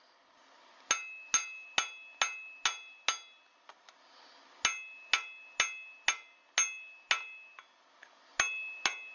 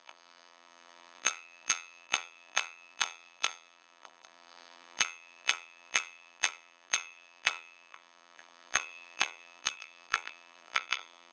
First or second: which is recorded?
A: first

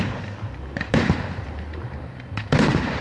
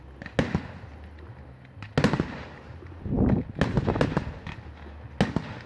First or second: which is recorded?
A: second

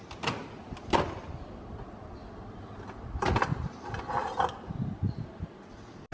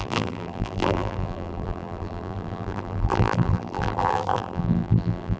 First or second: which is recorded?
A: first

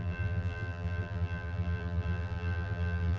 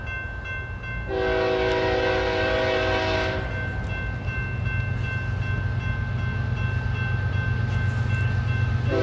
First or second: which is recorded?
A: second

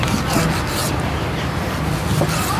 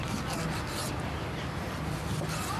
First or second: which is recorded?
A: second